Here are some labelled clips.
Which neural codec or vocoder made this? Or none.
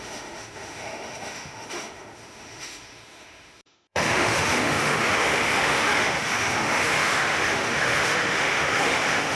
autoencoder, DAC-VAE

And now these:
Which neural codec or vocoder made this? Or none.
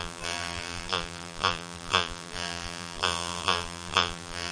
vocoder, BigVGAN v2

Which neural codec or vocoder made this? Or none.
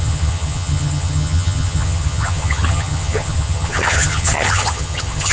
vocoder, HiFi-GAN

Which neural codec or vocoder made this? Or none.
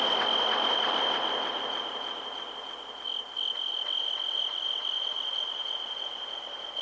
none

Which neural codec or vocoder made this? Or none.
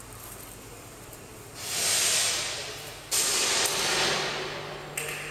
none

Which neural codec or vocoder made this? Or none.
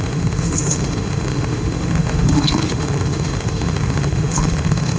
autoencoder, DAC-VAE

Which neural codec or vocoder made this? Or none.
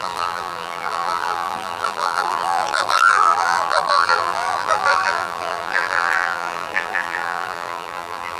vocoder, BigVGAN v2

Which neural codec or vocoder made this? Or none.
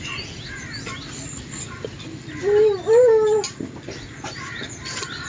none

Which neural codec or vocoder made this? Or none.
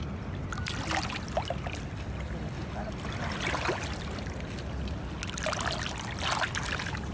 none